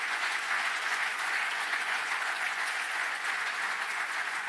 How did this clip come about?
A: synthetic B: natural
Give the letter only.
A